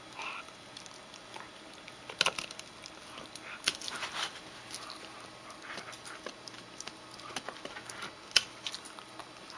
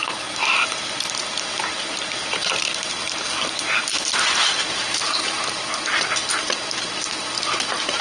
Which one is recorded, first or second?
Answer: first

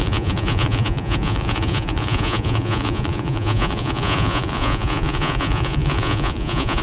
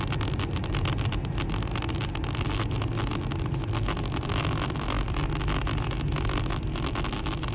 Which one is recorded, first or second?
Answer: second